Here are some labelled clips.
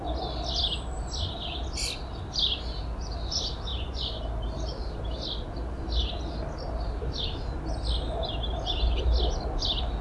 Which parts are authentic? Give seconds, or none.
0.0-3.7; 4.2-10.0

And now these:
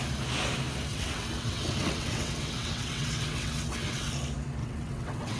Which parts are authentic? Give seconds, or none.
0.0-0.9; 4.1-4.6

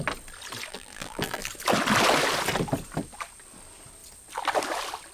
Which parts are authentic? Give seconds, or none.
0.0-0.7; 1.5-5.1

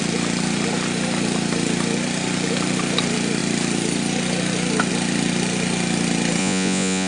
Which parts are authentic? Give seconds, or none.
0.0-6.4

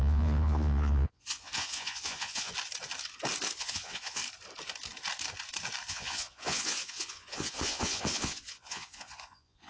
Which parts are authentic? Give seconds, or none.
2.5-3.6; 4.2-5.9